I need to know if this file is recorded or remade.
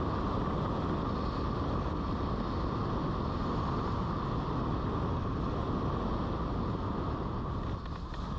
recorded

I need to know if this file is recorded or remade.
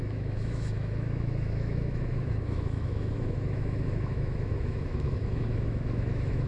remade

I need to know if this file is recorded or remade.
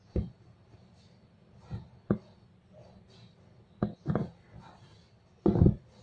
recorded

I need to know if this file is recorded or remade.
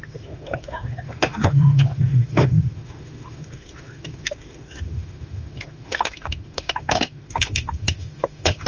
remade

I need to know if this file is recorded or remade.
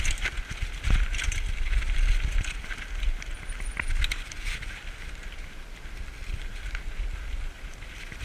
recorded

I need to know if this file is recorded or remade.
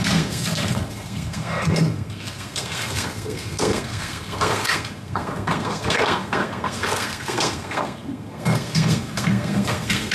remade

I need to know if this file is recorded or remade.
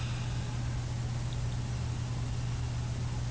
recorded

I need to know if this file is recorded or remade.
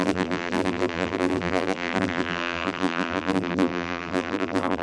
remade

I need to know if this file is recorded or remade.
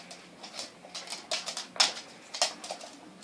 recorded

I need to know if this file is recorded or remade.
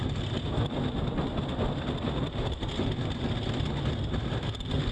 recorded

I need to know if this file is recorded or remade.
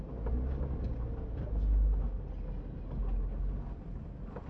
recorded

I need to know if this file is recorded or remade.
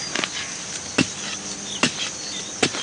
recorded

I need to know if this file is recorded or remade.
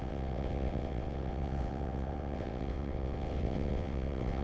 remade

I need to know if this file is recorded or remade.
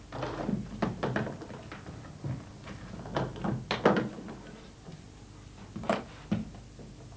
recorded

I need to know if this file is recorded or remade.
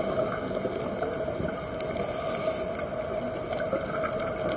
recorded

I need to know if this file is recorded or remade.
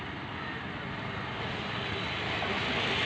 recorded